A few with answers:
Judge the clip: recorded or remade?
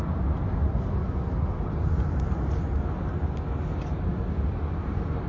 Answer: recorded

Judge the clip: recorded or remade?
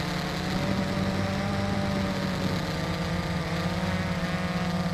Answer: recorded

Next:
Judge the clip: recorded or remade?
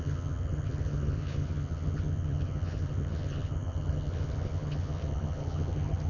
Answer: remade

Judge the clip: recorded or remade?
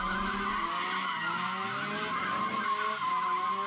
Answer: recorded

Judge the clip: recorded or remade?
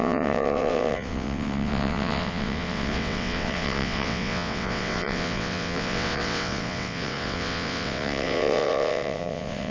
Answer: remade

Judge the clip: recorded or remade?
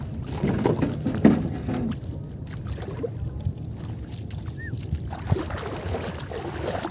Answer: recorded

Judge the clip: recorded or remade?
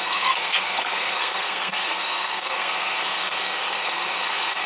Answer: remade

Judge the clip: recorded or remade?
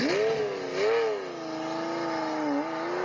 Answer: recorded